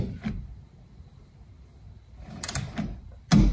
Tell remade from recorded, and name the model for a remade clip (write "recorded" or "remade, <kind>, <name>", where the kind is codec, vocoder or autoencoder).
recorded